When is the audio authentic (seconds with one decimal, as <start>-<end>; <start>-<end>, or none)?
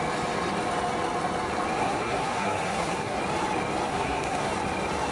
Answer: 0.0-1.8; 3.2-3.9; 4.5-5.1